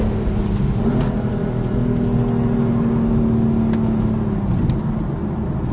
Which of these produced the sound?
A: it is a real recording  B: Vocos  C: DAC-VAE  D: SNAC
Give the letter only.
A